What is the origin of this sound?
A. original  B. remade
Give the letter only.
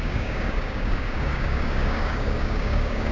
B